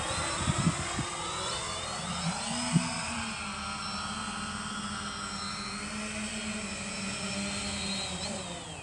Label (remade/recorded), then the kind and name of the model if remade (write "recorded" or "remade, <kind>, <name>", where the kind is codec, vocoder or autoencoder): recorded